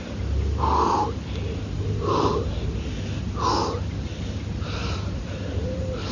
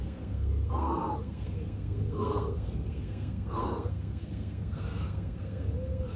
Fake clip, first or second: second